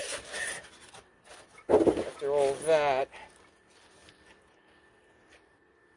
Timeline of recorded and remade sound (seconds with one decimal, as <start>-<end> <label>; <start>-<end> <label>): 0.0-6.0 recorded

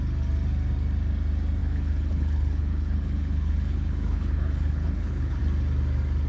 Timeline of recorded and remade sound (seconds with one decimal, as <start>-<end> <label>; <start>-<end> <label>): 0.0-1.6 recorded; 1.6-5.4 remade; 5.4-6.3 recorded

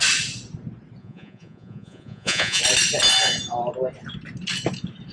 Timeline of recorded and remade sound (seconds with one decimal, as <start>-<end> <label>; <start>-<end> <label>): 0.0-1.0 recorded; 1.0-2.6 remade; 2.6-5.1 recorded

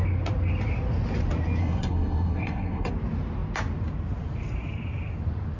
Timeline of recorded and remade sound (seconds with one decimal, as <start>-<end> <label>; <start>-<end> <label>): 0.0-1.6 recorded; 1.6-2.9 remade; 2.9-5.6 recorded